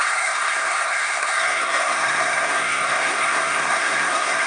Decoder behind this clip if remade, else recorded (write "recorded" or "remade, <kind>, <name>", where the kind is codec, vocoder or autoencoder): remade, codec, SNAC